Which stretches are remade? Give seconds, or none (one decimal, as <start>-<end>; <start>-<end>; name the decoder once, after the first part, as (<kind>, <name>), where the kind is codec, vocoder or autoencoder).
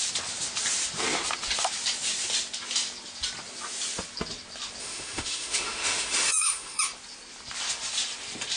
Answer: 4.8-6.8 (autoencoder, DAC-VAE)